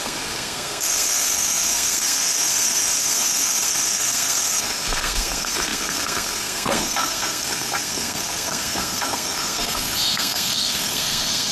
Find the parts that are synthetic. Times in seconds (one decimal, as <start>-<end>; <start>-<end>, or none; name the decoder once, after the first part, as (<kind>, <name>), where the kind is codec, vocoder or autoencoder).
0.0-11.5 (codec, SNAC)